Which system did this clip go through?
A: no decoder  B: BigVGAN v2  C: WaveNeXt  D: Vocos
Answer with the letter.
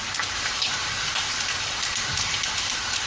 B